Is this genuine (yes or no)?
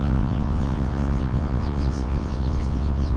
no